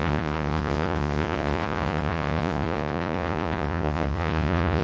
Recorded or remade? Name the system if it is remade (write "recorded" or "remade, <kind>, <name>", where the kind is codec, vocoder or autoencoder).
remade, vocoder, Vocos